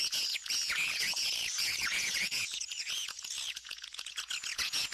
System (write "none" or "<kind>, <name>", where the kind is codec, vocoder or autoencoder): vocoder, Vocos